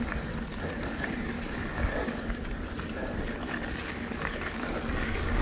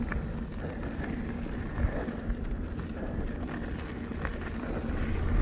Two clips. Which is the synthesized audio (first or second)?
first